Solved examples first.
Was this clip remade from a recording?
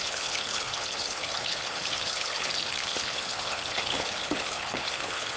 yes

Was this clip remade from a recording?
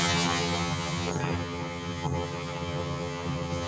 yes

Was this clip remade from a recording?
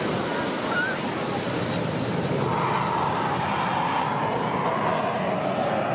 no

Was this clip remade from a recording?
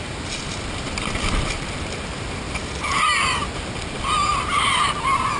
yes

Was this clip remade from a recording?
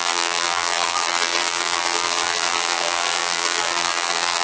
yes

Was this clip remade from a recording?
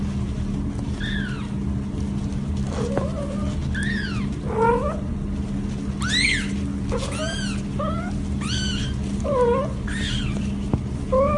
no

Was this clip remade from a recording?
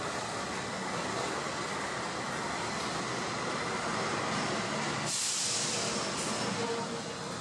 no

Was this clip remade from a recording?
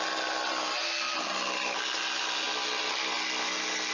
no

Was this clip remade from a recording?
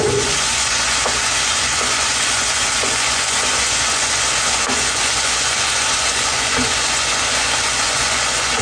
yes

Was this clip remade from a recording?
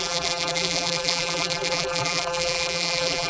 yes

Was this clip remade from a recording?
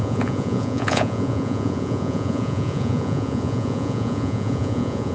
yes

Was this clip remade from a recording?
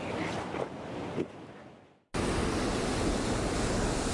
no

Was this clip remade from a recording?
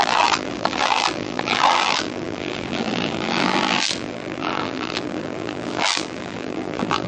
yes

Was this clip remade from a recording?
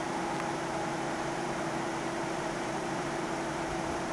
yes